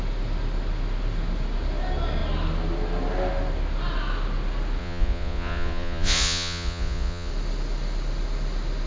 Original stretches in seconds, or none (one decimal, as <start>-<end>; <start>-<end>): 0.0-4.8; 7.3-8.9

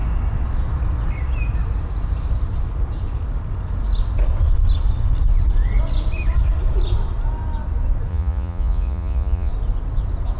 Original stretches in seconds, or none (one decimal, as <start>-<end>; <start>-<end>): 0.0-8.1; 9.5-10.4